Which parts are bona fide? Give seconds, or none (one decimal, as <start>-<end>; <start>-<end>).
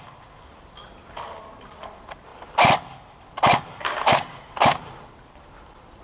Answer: 0.0-6.0